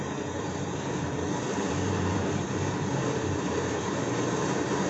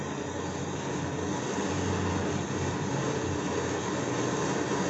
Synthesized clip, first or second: first